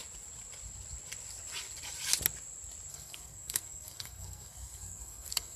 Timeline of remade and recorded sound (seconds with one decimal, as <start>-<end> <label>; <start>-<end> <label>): 0.0-2.9 recorded; 2.9-5.6 remade